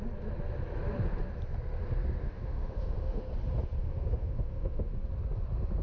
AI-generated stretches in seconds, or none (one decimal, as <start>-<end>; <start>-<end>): 2.2-3.2; 3.8-4.9

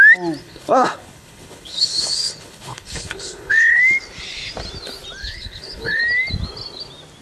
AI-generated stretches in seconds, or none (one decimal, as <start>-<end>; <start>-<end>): 0.4-3.8; 5.2-6.0

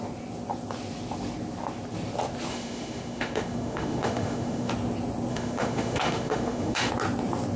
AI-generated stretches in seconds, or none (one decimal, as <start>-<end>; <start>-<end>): 2.5-4.7; 5.3-6.9

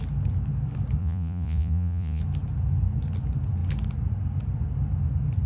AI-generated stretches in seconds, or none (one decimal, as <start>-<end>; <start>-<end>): 1.0-2.2

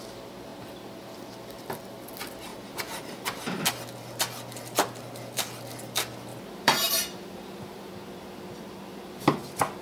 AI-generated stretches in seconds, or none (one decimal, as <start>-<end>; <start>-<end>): 2.5-3.6; 6.3-7.9